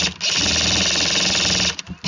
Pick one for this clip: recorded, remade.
recorded